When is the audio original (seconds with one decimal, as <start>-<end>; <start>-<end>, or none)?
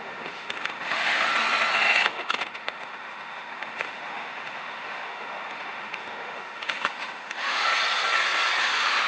1.3-2.0; 7.7-8.6